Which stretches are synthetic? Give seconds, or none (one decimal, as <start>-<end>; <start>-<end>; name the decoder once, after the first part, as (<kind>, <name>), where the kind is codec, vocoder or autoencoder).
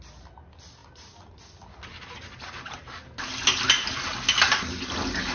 none